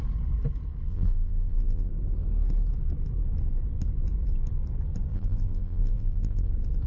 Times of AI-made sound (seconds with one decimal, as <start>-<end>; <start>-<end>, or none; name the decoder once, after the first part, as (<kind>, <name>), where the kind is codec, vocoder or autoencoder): 0.9-1.9 (vocoder, BigVGAN v2); 5.1-6.5